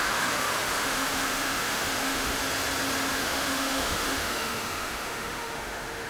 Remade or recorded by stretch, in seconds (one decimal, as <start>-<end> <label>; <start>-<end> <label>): 0.0-2.4 remade; 2.4-3.1 recorded; 3.1-6.1 remade